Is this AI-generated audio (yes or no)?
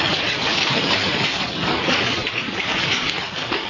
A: yes